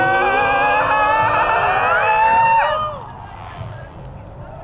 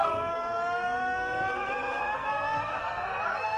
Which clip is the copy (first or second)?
second